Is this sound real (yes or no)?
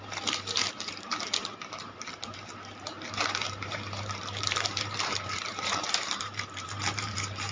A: no